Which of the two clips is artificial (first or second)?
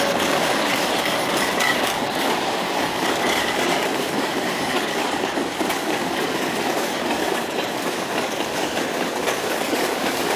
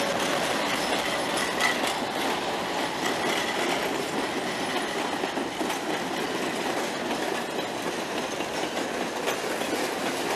first